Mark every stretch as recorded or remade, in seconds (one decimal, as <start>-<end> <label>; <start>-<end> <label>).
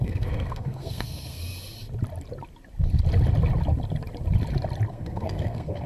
0.0-1.4 remade; 1.4-4.9 recorded; 4.9-5.9 remade